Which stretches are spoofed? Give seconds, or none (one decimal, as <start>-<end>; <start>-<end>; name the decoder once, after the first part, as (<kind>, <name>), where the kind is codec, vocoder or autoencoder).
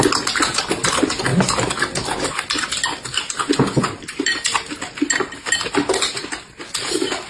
none